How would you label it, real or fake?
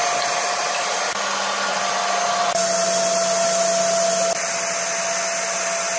real